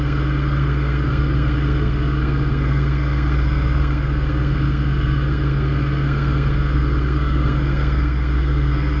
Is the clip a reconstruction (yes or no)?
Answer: yes